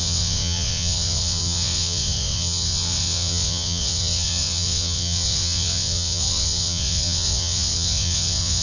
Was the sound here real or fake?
fake